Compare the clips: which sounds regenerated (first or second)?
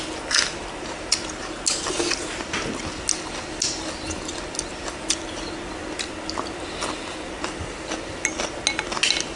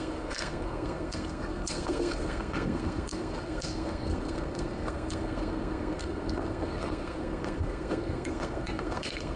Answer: second